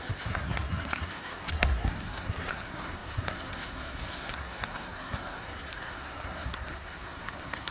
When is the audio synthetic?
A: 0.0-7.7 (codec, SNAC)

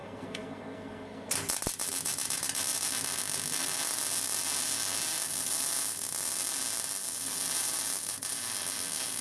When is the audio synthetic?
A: 0.0-1.3 (codec, SNAC)